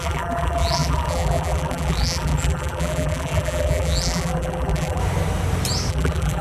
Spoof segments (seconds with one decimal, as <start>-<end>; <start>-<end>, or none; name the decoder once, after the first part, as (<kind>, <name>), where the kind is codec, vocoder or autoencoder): 0.0-5.0 (vocoder, BigVGAN v2); 5.9-6.4